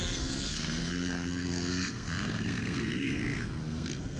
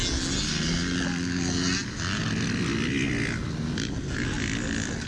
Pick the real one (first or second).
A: second